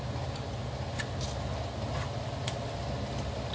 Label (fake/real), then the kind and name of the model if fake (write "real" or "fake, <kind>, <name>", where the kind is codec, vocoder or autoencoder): real